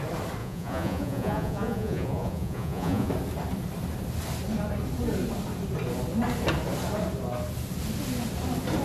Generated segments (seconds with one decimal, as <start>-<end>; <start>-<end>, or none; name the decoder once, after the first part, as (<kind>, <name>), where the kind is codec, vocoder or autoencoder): 0.4-3.1 (vocoder, Vocos)